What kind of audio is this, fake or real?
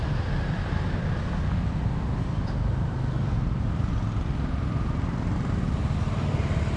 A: real